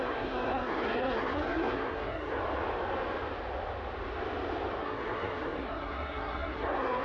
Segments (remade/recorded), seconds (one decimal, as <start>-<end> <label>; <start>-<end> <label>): 0.0-2.4 remade; 2.4-4.8 recorded; 4.8-7.0 remade